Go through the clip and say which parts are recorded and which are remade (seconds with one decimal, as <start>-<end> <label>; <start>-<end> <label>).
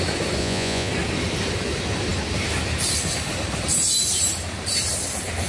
0.0-0.4 recorded; 0.4-0.9 remade; 0.9-5.5 recorded